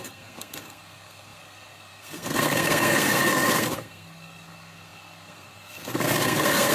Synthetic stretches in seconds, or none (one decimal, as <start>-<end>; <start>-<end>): 0.0-6.7